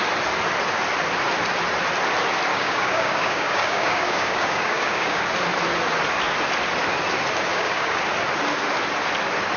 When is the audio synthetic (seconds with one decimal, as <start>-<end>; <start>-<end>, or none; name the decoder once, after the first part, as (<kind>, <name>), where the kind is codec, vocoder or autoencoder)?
2.5-5.2 (codec, DAC); 7.5-8.0